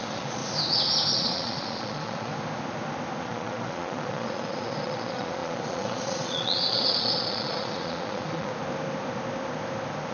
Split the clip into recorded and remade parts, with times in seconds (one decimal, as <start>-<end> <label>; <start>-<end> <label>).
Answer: 0.0-0.4 remade; 0.4-1.1 recorded; 1.1-2.3 remade; 2.3-3.2 recorded; 3.2-8.5 remade; 8.5-10.1 recorded